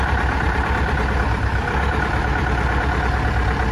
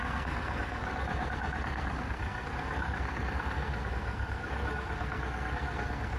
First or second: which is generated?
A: second